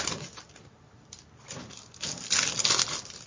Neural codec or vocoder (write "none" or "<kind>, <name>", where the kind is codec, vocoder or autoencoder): none